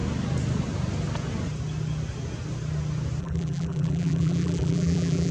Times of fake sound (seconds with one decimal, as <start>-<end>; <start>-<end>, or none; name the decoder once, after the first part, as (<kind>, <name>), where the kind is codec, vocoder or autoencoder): 3.2-5.3 (vocoder, BigVGAN v2)